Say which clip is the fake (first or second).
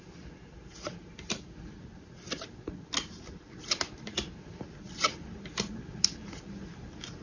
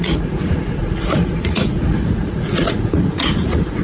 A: second